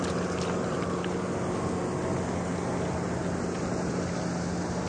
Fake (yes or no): no